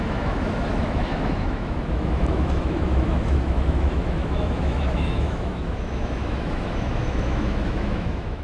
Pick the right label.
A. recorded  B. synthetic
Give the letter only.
B